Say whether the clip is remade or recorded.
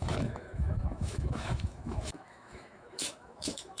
remade